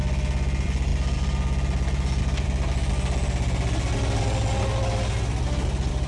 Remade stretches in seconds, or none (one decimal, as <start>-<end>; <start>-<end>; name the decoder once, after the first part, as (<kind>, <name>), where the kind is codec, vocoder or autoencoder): none